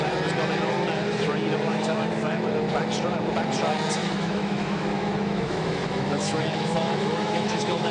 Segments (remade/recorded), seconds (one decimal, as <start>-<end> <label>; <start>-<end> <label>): 0.0-1.7 recorded; 1.7-2.5 remade; 2.5-4.0 recorded; 4.0-7.9 remade